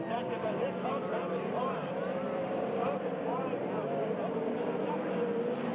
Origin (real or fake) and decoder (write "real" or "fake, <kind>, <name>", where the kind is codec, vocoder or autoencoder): real